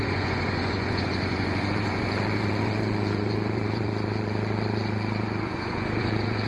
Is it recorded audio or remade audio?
remade